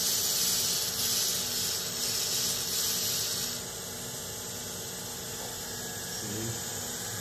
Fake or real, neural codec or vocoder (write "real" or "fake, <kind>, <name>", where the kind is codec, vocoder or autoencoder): real